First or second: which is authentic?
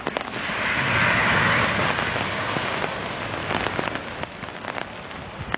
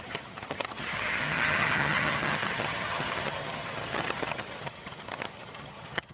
first